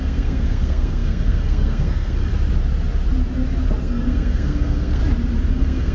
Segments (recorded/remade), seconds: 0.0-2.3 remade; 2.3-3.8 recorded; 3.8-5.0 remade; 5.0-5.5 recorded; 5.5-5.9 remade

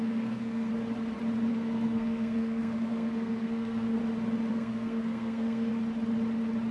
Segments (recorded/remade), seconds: 0.0-0.7 remade; 0.7-1.5 recorded; 1.5-4.0 remade; 4.0-4.5 recorded; 4.5-5.7 remade; 5.7-6.7 recorded

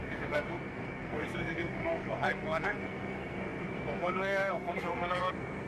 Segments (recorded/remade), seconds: 0.0-5.7 remade